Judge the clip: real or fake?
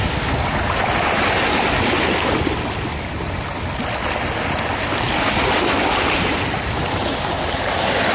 real